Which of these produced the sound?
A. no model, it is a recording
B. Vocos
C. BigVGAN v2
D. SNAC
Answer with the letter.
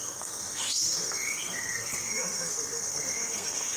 D